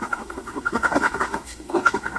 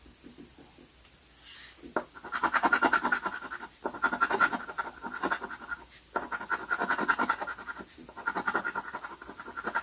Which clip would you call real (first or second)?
second